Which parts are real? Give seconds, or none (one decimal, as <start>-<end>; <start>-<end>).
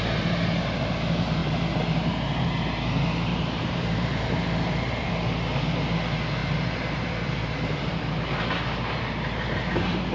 0.0-3.3; 5.1-6.4; 8.0-10.1